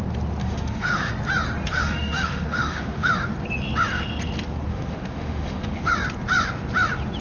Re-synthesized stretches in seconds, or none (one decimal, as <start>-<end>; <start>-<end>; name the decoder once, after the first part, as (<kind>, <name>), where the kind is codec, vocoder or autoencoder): 0.4-1.1 (autoencoder, DAC-VAE); 1.7-3.1; 4.7-5.9